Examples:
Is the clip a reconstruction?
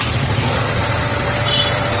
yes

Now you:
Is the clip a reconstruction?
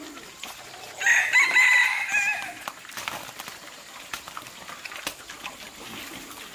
no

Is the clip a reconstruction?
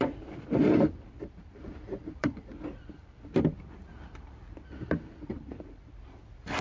yes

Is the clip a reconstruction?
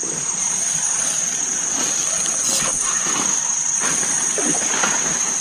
yes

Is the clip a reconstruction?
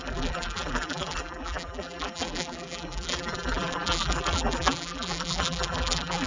yes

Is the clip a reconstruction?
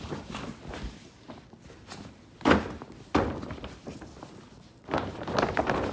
no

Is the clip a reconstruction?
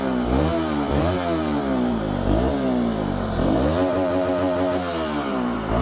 yes